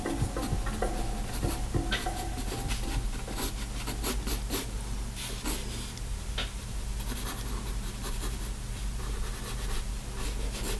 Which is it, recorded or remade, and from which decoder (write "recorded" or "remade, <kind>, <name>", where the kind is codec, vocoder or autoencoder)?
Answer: recorded